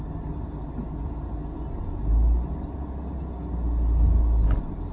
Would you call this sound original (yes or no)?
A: yes